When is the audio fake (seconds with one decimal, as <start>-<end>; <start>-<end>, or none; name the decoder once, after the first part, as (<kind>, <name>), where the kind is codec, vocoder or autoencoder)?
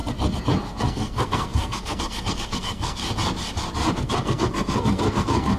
0.6-3.0 (codec, SNAC); 3.9-5.6